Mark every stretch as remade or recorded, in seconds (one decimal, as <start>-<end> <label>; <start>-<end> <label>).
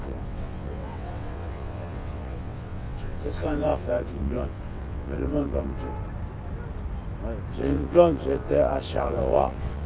0.0-6.0 remade; 6.0-7.5 recorded; 7.5-9.9 remade